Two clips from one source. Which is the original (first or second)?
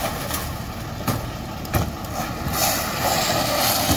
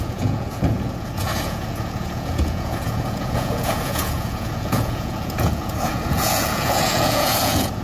first